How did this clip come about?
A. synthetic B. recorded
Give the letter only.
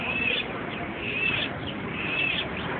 A